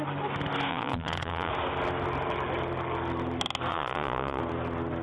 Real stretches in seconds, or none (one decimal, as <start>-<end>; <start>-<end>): 0.0-0.7; 1.5-3.7; 4.4-5.0